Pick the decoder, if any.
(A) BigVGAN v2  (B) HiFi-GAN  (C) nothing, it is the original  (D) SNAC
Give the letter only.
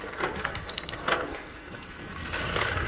D